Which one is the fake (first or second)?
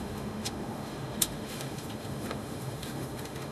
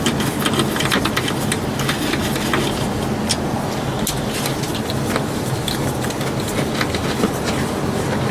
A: first